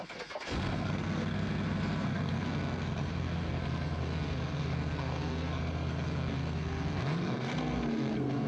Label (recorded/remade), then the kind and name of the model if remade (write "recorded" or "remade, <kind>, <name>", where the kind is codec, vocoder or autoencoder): remade, codec, SNAC